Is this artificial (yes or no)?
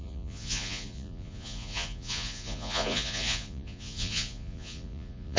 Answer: yes